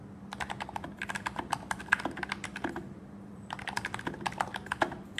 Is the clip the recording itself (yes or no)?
yes